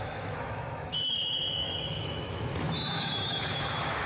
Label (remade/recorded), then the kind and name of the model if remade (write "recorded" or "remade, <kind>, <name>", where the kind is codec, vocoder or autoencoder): remade, autoencoder, DAC-VAE